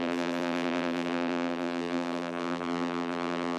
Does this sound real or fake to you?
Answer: fake